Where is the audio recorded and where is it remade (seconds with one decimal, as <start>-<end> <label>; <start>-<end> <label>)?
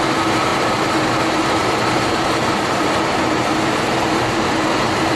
0.0-0.5 recorded; 0.5-1.1 remade; 1.1-1.6 recorded; 1.6-4.7 remade; 4.7-5.2 recorded